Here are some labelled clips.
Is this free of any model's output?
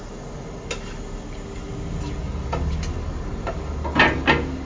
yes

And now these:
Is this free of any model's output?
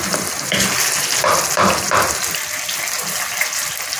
yes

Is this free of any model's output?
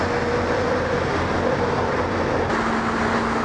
yes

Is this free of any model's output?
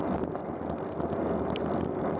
yes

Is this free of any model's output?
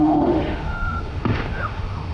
no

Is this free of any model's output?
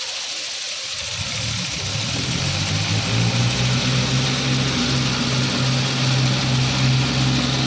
yes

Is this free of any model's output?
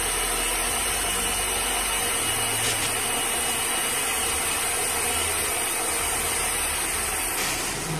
yes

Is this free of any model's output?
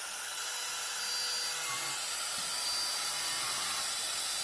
yes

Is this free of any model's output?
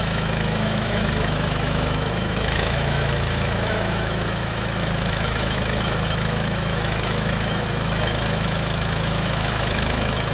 no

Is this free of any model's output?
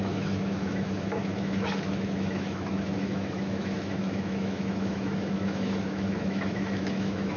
no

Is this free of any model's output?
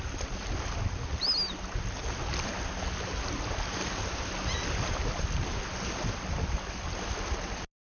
yes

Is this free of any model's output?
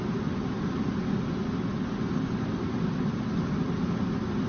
yes